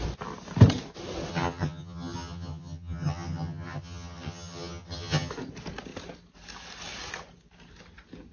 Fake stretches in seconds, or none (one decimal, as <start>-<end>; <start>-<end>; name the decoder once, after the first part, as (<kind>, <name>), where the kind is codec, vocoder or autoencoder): 1.3-5.3 (vocoder, HiFi-GAN)